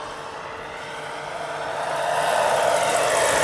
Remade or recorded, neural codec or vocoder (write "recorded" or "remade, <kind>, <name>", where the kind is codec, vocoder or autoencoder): recorded